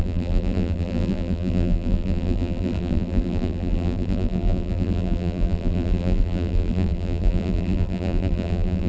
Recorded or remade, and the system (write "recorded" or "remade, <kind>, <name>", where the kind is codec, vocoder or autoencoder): remade, vocoder, BigVGAN v2